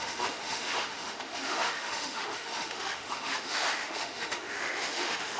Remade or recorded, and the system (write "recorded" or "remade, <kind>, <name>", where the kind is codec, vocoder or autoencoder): remade, autoencoder, DAC-VAE